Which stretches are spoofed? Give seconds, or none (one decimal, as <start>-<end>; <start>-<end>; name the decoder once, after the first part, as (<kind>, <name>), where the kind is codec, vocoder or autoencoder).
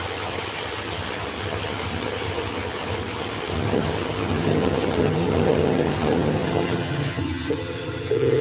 0.0-8.4 (vocoder, HiFi-GAN)